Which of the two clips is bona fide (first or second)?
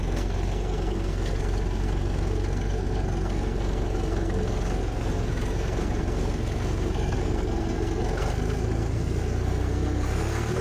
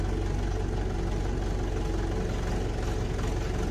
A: second